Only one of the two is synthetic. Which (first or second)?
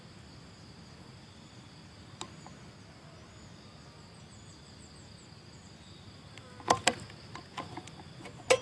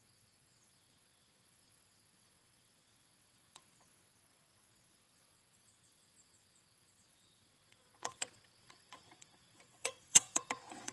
second